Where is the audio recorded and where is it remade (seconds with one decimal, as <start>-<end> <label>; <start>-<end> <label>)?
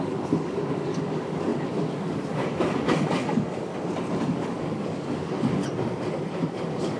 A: 0.0-3.7 remade; 3.7-4.2 recorded; 4.2-5.6 remade; 5.6-6.4 recorded; 6.4-7.0 remade